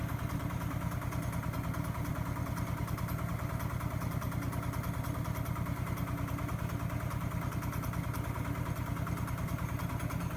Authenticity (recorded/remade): recorded